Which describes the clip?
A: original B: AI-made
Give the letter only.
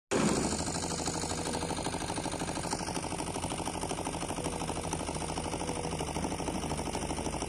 A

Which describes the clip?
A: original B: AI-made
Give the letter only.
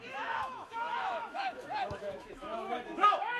B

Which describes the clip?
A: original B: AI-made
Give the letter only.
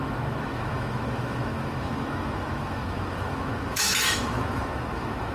B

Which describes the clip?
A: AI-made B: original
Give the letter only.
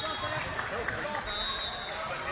B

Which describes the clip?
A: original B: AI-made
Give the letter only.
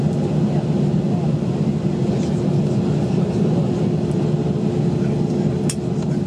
A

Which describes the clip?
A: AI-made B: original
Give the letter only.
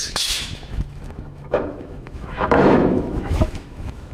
A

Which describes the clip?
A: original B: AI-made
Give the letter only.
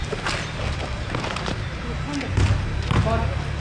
A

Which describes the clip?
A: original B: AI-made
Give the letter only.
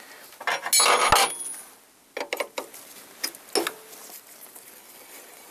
A